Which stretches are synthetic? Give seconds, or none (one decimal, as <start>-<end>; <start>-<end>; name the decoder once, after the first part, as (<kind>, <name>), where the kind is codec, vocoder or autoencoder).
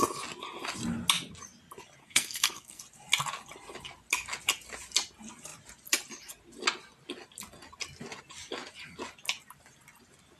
2.0-2.8 (codec, SNAC)